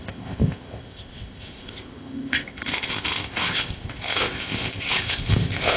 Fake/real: fake